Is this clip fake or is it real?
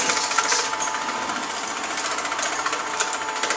real